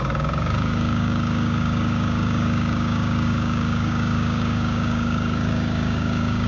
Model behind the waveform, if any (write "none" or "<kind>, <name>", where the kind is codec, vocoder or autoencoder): codec, DAC